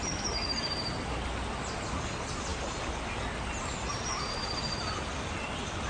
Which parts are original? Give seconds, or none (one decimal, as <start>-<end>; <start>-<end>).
0.0-5.9